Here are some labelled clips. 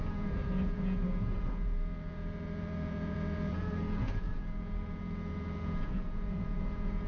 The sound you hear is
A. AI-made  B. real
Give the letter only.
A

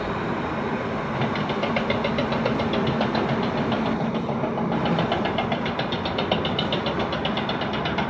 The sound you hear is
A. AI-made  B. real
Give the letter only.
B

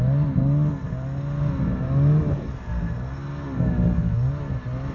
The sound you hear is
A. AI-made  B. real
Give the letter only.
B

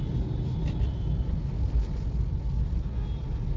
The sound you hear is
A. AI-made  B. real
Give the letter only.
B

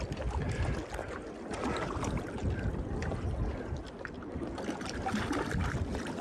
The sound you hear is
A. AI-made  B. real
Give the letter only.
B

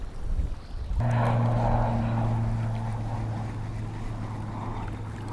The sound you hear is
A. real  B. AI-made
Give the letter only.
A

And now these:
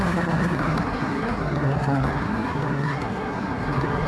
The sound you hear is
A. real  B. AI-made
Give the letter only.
B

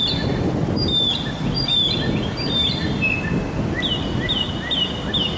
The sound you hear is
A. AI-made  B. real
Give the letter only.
B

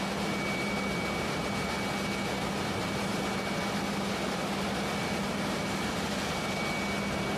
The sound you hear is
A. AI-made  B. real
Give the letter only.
B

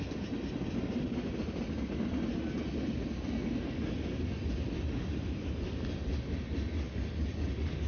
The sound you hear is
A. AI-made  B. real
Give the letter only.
B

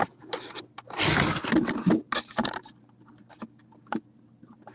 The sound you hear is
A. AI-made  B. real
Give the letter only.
B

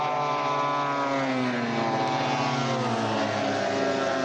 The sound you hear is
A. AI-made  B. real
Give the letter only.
B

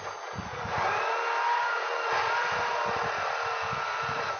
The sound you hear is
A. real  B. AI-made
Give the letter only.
A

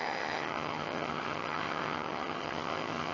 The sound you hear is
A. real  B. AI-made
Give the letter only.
B